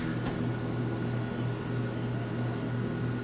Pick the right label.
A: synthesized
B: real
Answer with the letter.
B